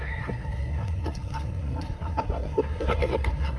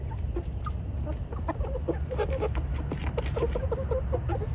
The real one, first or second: second